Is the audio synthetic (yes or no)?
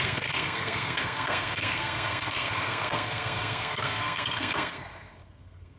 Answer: yes